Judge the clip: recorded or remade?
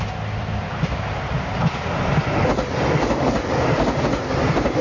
recorded